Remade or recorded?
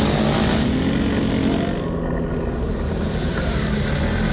recorded